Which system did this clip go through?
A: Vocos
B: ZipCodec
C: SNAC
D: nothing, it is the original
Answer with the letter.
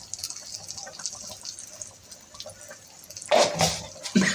D